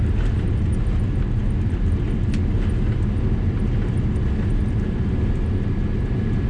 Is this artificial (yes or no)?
no